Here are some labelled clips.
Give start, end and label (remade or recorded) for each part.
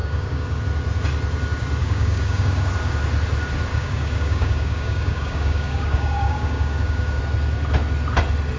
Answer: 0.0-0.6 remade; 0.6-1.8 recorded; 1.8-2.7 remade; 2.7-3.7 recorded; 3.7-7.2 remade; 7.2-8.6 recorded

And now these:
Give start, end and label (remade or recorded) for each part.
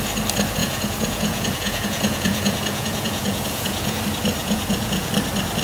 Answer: 0.0-0.6 recorded; 0.6-4.0 remade; 4.0-4.4 recorded; 4.4-5.1 remade; 5.1-5.6 recorded